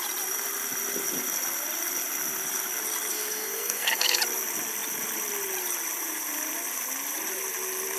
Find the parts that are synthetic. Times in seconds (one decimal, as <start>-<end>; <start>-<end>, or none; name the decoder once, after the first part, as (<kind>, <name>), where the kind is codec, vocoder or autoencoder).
3.1-4.2 (codec, SNAC)

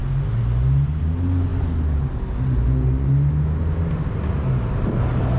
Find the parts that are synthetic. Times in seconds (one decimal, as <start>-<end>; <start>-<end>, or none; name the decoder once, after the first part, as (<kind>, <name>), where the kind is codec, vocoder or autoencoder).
none

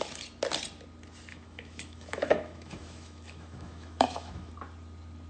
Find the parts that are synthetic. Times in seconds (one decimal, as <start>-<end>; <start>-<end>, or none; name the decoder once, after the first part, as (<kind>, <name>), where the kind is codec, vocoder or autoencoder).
1.3-4.5 (autoencoder, DAC-VAE)

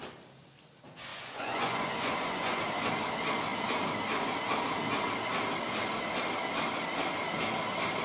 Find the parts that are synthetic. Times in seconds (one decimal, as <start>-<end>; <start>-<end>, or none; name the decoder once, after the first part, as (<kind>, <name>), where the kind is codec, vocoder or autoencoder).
1.1-2.6 (vocoder, Vocos)

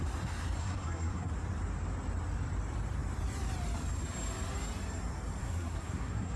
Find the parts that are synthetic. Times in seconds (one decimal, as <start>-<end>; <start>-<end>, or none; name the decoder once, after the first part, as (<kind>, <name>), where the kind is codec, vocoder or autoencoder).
0.6-1.3 (codec, SNAC); 5.4-6.4

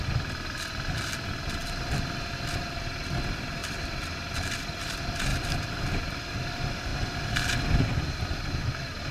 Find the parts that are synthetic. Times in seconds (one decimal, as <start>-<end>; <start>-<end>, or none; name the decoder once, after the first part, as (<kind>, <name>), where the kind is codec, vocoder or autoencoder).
3.6-4.8 (vocoder, BigVGAN v2); 5.3-5.8